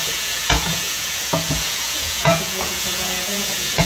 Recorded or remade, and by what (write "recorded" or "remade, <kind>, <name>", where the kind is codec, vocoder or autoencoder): remade, vocoder, Vocos